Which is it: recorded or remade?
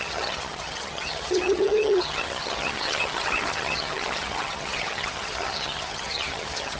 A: remade